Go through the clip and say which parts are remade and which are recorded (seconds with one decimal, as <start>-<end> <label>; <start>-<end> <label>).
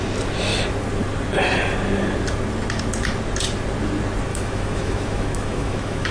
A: 0.0-4.3 recorded; 4.3-6.1 remade